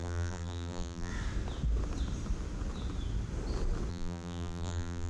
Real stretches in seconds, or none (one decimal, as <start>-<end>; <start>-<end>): 1.1-3.9